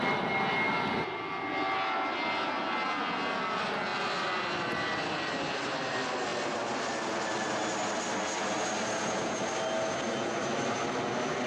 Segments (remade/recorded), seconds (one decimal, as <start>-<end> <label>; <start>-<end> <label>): 0.0-11.5 recorded